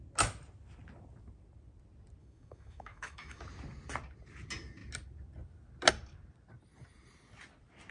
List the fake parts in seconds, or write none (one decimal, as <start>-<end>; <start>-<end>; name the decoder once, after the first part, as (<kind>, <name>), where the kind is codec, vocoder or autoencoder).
2.2-3.4 (autoencoder, DAC-VAE)